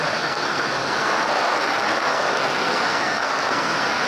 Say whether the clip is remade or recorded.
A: remade